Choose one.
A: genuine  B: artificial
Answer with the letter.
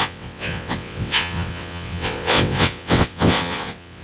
B